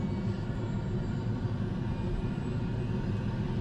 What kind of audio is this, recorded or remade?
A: recorded